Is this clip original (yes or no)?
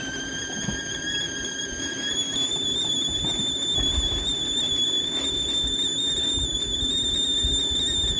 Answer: yes